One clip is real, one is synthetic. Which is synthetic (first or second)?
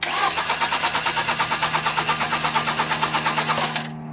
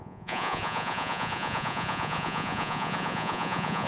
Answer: second